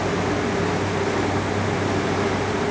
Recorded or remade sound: recorded